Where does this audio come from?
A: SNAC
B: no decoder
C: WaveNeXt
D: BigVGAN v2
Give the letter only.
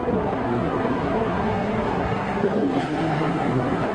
A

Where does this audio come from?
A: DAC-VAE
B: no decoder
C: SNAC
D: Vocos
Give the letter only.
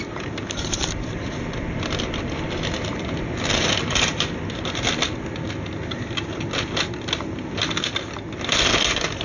B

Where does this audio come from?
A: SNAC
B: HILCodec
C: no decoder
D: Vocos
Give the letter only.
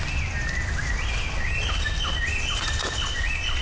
C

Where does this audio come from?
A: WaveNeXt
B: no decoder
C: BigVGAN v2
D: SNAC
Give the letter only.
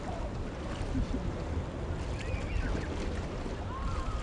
B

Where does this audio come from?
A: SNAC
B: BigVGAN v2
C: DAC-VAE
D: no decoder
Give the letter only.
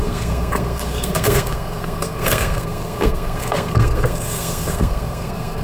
A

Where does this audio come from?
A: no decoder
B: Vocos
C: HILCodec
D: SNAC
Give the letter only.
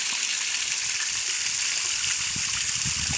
A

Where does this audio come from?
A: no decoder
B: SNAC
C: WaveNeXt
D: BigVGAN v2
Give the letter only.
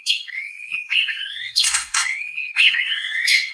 B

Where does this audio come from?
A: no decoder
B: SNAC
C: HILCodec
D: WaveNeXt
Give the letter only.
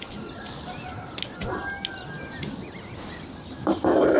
A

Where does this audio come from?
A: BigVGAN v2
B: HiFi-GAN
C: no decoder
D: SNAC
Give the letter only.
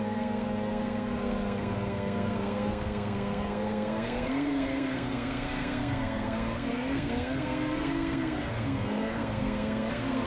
D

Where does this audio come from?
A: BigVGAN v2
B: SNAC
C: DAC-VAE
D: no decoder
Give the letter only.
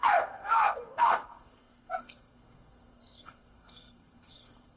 B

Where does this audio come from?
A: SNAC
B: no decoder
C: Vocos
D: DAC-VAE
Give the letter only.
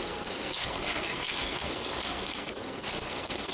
A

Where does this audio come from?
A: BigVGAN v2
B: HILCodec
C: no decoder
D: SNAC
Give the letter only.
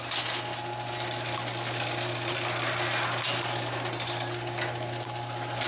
C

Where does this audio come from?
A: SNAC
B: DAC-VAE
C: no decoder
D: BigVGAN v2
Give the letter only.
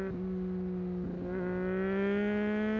C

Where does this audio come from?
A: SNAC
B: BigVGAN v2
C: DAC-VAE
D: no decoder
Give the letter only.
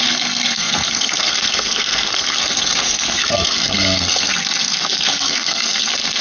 A